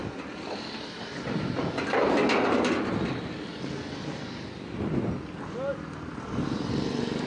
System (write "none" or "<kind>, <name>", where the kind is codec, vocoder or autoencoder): none